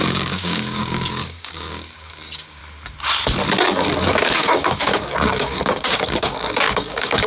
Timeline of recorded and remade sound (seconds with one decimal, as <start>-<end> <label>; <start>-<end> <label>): 0.0-2.6 remade; 2.6-4.0 recorded; 4.0-7.3 remade